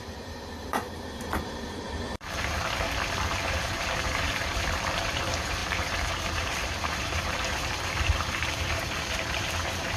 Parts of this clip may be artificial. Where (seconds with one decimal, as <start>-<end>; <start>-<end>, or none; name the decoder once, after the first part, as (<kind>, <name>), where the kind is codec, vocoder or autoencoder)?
0.0-2.6 (vocoder, BigVGAN v2); 3.2-10.0

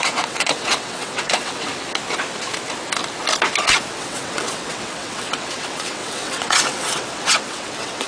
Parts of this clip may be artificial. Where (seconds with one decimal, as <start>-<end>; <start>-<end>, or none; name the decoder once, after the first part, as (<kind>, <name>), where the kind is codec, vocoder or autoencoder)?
0.0-1.7 (vocoder, WaveNeXt); 3.9-8.1

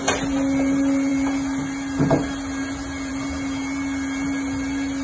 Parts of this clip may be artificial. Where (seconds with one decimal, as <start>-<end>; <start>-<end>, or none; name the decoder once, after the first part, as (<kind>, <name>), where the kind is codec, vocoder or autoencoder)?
none

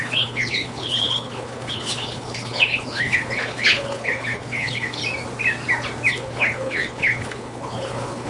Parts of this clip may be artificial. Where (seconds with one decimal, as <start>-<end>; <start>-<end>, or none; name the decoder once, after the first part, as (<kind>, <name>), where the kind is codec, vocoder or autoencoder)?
0.0-5.0 (codec, HILCodec); 6.1-8.3

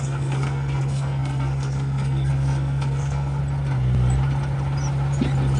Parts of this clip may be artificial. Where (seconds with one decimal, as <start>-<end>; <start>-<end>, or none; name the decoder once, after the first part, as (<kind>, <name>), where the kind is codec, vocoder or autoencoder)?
0.0-3.4 (codec, SNAC)

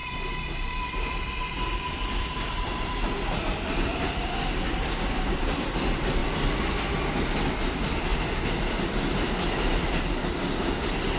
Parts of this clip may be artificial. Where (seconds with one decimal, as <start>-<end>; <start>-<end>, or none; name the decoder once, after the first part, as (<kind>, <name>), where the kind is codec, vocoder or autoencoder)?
0.0-6.2 (vocoder, BigVGAN v2); 7.6-8.1; 9.0-9.7

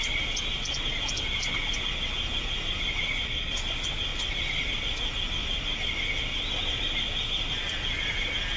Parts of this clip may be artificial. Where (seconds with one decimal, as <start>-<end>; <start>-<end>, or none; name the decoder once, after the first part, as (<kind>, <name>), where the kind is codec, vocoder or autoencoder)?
none

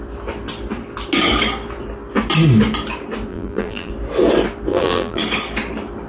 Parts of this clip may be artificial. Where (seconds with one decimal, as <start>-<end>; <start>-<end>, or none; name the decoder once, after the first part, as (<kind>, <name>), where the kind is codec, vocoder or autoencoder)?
3.3-3.9 (vocoder, BigVGAN v2); 4.7-5.2